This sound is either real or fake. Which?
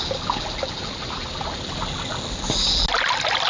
real